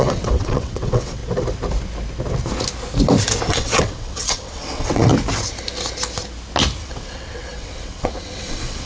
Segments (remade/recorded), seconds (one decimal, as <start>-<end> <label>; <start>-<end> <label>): 0.0-1.2 remade; 1.2-3.5 recorded; 3.5-5.1 remade; 5.1-6.8 recorded; 6.8-8.9 remade